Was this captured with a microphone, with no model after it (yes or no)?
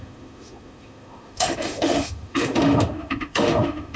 no